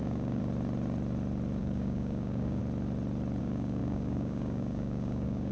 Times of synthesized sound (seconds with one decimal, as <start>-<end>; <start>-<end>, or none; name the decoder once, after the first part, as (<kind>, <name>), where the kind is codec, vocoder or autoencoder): 0.0-0.4 (codec, DAC); 1.6-2.6; 3.4-5.5